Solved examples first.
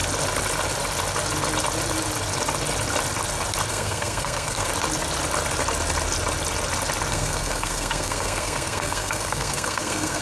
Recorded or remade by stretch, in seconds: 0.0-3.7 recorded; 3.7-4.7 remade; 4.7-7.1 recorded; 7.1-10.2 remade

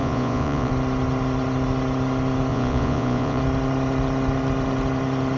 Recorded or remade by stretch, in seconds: 0.0-0.7 remade; 0.7-2.5 recorded; 2.5-3.4 remade; 3.4-5.4 recorded